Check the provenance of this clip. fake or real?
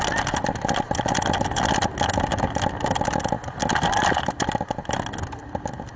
real